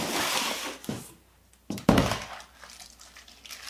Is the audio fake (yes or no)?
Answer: no